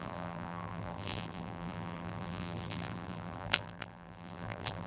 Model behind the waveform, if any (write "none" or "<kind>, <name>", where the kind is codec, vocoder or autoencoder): vocoder, BigVGAN v2